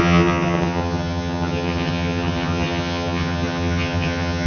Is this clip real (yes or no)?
no